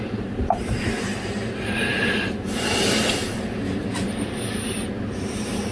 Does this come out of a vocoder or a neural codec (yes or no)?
yes